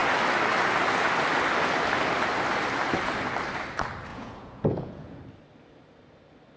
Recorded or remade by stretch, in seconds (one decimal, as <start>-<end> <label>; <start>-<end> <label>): 0.0-4.1 recorded; 4.1-5.2 remade; 5.2-6.6 recorded